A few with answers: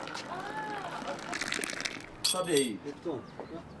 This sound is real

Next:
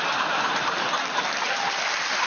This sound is real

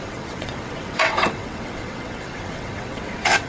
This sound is fake